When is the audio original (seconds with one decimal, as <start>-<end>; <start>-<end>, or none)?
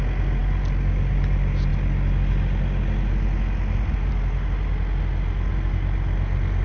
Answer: 0.0-6.6